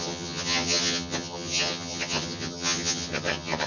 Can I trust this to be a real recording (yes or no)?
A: no